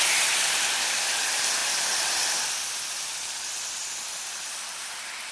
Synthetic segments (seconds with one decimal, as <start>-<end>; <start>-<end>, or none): none

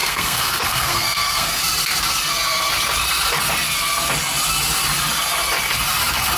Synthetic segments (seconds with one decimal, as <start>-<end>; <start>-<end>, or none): 0.0-1.6